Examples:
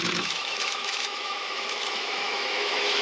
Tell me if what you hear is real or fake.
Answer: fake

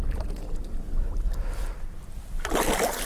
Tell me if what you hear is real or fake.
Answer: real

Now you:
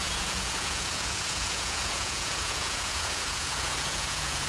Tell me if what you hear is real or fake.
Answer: fake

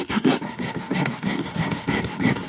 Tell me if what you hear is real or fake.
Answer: fake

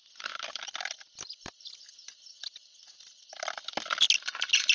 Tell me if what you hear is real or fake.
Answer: real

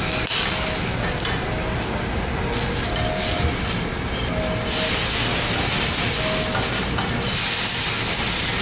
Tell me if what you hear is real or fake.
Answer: real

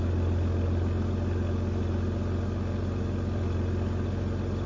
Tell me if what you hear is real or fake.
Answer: real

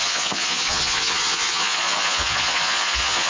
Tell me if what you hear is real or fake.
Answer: fake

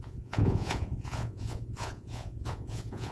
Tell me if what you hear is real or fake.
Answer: fake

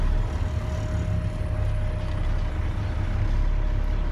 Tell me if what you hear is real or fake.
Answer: real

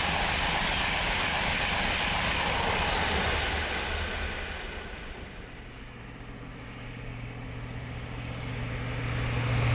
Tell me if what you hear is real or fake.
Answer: real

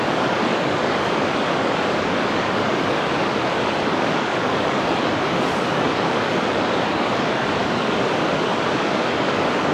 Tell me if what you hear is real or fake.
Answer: fake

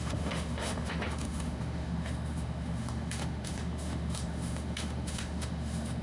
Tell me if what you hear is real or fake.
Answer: fake